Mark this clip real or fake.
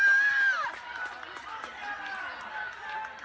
real